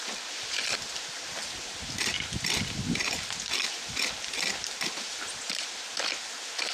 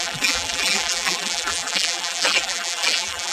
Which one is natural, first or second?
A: first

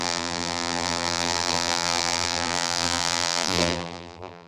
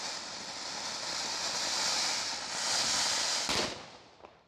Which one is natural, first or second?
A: second